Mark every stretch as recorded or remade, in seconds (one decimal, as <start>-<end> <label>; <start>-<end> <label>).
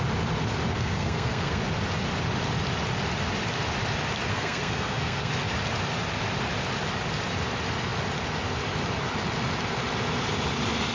0.0-0.7 recorded; 0.7-1.6 remade; 1.6-4.3 recorded; 4.3-5.3 remade; 5.3-10.9 recorded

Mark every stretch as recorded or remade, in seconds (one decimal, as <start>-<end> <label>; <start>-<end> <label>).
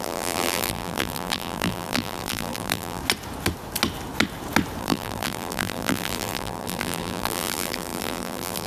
0.0-3.0 remade; 3.0-4.8 recorded; 4.8-8.7 remade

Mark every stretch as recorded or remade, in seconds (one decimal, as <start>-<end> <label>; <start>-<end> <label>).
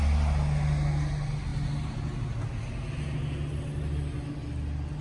0.0-5.0 recorded